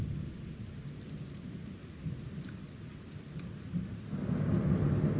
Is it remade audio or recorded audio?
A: recorded